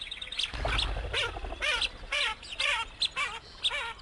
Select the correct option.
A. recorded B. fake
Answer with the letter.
A